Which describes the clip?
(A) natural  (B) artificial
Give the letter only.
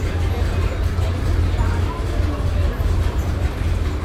A